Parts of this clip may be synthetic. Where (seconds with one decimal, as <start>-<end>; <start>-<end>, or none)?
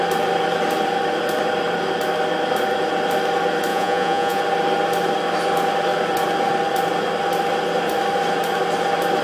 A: 3.7-4.4